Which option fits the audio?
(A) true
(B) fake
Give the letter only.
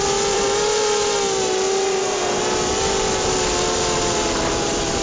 B